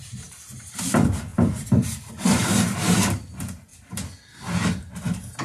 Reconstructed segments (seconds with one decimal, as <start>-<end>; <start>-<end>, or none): 0.0-3.7; 4.4-5.4